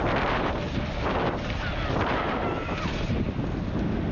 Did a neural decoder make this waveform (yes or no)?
no